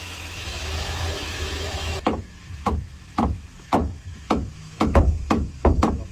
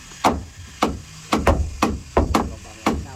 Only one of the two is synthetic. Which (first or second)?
first